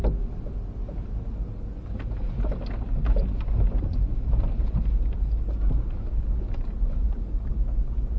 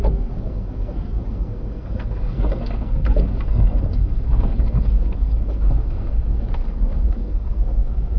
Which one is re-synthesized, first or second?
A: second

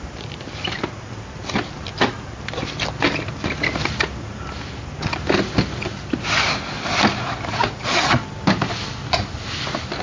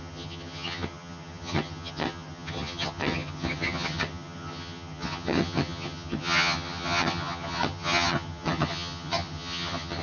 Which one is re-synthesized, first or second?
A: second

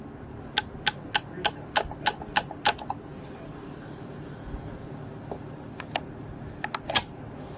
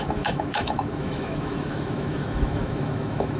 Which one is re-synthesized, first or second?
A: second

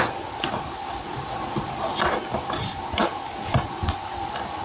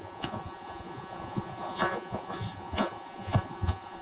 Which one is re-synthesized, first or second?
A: second